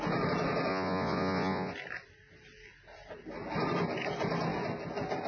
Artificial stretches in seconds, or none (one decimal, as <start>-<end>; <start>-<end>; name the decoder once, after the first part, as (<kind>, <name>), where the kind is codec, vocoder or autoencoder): 0.7-1.7 (vocoder, Vocos)